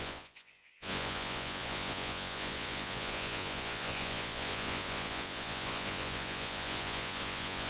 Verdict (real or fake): fake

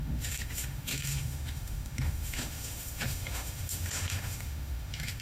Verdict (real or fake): fake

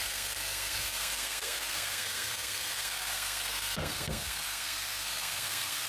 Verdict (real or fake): fake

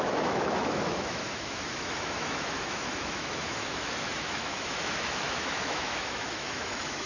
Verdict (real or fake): fake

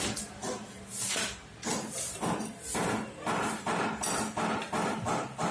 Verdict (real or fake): real